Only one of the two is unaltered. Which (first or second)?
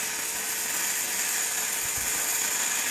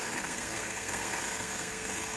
first